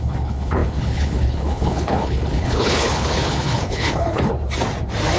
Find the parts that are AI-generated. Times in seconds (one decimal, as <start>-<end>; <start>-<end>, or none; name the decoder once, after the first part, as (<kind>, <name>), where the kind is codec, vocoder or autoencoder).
0.0-4.3 (codec, HILCodec)